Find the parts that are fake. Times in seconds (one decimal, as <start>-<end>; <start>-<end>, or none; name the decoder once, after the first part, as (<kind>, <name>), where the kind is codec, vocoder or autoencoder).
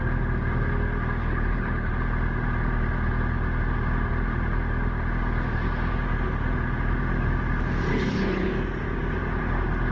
1.2-1.9 (codec, HILCodec); 7.9-8.5